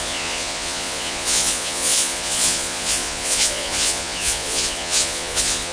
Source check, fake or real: fake